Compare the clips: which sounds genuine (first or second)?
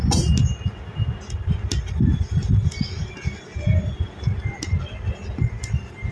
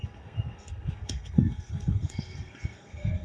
first